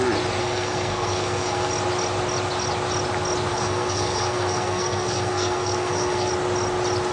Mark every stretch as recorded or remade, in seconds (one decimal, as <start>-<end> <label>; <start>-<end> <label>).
0.0-0.4 recorded; 0.4-1.7 remade; 1.7-3.5 recorded; 3.5-6.3 remade; 6.3-7.1 recorded